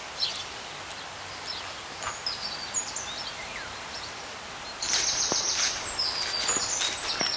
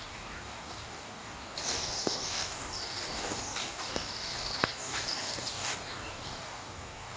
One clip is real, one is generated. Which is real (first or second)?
first